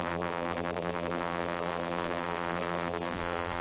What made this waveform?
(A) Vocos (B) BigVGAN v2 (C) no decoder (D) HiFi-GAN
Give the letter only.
B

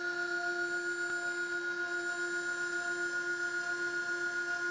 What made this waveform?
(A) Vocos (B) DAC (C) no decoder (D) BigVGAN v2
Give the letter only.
C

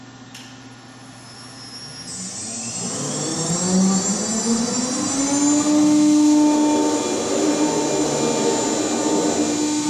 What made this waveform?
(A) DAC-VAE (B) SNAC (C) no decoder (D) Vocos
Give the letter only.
C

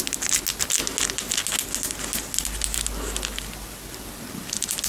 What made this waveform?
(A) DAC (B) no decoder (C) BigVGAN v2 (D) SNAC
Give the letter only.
B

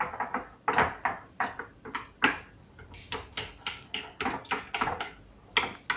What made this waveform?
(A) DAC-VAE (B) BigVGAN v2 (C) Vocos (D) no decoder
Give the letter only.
D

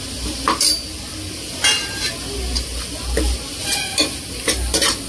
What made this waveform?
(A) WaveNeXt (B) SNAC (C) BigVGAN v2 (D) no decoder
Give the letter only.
D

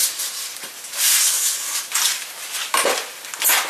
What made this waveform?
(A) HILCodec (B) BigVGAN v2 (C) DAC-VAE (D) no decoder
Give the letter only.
D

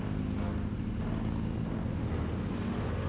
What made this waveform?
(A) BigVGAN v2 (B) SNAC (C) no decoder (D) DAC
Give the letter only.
C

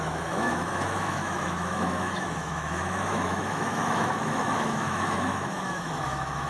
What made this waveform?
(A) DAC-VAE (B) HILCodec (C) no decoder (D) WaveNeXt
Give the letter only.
A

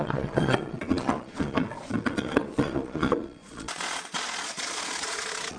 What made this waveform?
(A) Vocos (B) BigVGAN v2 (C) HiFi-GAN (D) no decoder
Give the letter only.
A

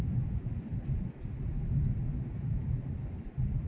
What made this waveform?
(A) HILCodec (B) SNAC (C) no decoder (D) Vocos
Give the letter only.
C